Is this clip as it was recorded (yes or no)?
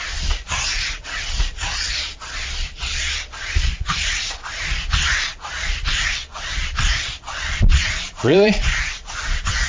no